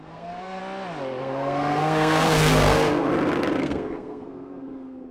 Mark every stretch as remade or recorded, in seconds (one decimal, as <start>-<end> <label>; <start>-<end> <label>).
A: 0.0-0.6 remade; 0.6-1.2 recorded; 1.2-3.1 remade; 3.1-3.6 recorded; 3.6-5.1 remade